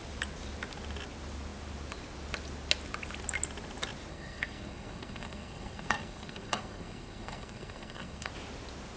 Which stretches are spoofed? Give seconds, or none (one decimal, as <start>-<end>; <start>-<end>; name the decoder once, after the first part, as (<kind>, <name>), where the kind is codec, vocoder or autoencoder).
4.1-8.3 (codec, SNAC)